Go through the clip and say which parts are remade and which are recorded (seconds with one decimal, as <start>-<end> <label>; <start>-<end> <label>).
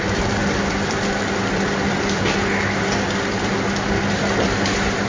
0.0-0.4 recorded; 0.4-3.5 remade; 3.5-5.1 recorded